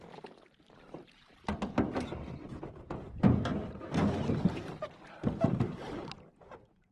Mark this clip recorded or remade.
remade